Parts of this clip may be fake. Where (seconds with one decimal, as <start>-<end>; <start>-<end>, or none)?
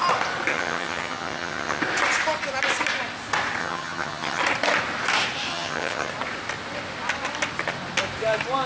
0.5-1.8; 3.6-4.4; 5.5-6.1